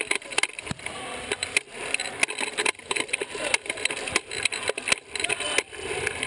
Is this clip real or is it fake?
real